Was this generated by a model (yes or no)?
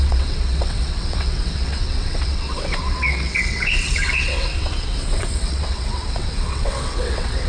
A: yes